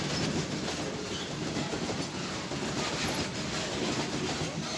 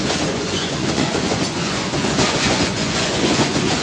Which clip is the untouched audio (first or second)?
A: first